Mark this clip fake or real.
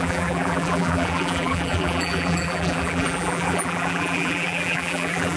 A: fake